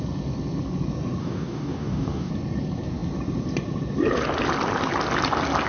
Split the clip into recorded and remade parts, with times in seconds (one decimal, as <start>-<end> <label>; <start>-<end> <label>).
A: 0.0-1.2 recorded; 1.2-2.3 remade; 2.3-5.7 recorded